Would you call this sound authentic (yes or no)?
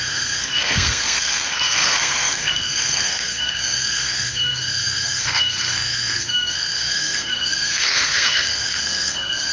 no